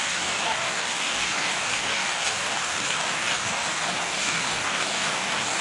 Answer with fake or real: fake